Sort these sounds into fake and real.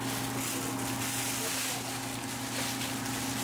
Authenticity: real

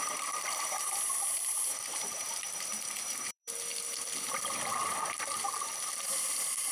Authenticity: fake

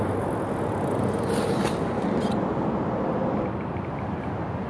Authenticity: real